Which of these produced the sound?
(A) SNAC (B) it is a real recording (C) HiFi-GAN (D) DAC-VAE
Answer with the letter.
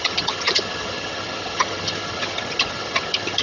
C